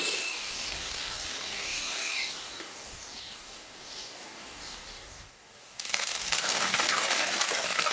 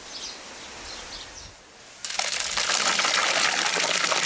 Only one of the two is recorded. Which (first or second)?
second